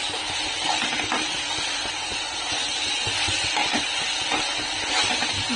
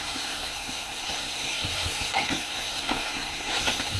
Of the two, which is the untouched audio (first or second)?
first